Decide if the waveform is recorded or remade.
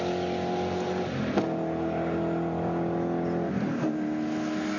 recorded